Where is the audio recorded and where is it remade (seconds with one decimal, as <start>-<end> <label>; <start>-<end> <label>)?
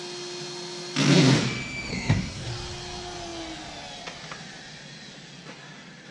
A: 0.0-1.9 recorded; 1.9-2.5 remade; 2.5-6.1 recorded